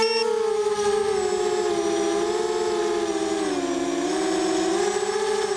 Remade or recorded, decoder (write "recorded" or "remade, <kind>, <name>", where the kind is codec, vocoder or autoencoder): recorded